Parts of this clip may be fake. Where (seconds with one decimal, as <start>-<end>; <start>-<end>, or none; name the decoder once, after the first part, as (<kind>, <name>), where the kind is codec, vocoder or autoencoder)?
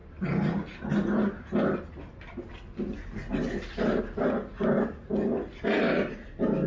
none